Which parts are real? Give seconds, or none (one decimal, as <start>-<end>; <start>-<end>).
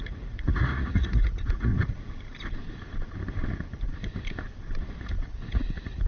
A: 1.7-5.0